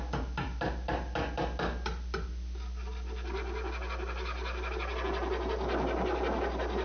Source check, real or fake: real